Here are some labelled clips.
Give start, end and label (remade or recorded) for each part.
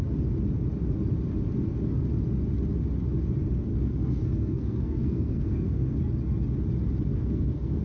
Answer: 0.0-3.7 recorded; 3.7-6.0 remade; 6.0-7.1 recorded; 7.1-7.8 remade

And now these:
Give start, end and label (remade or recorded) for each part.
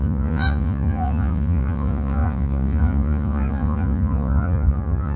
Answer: 0.0-5.2 remade